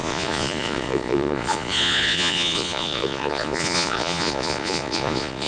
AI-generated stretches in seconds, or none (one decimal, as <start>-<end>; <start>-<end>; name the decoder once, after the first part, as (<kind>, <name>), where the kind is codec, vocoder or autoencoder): 0.0-5.5 (vocoder, Vocos)